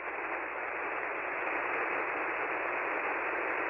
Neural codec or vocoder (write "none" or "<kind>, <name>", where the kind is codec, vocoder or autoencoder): none